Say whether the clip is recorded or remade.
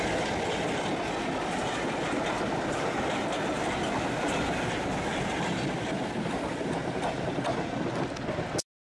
recorded